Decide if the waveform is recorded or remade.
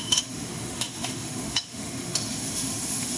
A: remade